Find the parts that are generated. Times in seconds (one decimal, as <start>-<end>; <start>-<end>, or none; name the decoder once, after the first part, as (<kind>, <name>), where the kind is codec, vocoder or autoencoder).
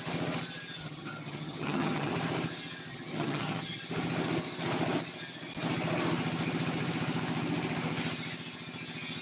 0.8-2.1 (vocoder, HiFi-GAN); 2.9-3.8